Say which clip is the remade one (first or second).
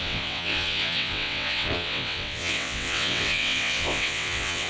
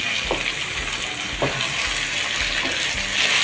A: first